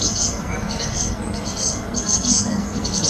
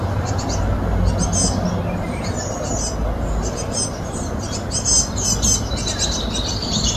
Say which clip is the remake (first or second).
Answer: first